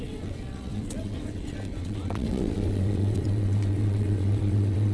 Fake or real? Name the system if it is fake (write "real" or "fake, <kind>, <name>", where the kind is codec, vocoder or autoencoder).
fake, vocoder, WaveNeXt